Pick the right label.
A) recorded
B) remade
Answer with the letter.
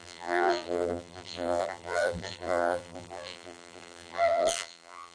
B